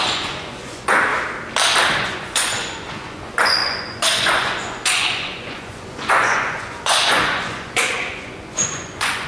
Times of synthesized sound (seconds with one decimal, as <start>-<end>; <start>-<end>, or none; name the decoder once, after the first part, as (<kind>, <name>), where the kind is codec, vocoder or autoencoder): 0.0-1.1 (vocoder, Vocos); 2.0-9.3